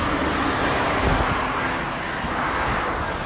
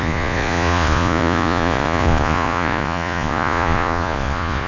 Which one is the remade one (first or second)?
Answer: second